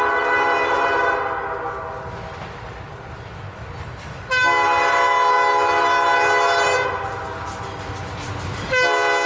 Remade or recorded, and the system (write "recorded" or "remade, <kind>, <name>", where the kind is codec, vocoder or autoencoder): recorded